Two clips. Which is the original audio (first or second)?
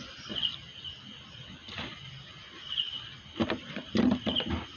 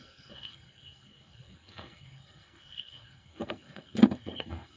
first